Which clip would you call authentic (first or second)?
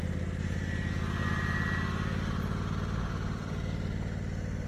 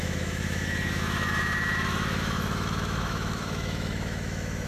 first